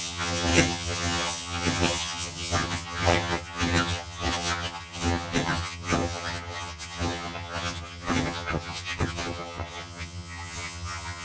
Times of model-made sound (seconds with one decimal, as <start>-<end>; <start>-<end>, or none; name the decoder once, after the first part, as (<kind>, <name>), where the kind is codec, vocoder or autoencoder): 0.0-11.2 (vocoder, HiFi-GAN)